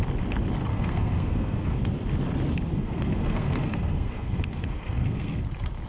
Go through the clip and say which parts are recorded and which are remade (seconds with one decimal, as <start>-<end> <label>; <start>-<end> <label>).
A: 0.0-0.7 recorded; 0.7-1.8 remade; 1.8-2.7 recorded; 2.7-5.4 remade; 5.4-5.9 recorded